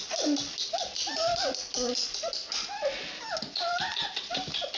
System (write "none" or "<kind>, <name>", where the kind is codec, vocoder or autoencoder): none